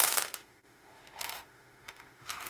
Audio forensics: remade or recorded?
remade